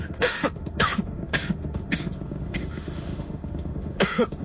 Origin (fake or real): fake